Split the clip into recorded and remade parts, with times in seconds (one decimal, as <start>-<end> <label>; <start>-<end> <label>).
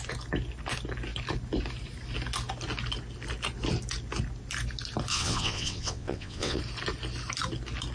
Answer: 0.0-5.1 recorded; 5.1-6.6 remade; 6.6-7.9 recorded